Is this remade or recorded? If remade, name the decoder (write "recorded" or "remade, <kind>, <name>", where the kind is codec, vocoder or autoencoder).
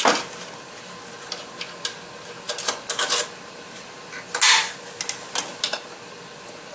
recorded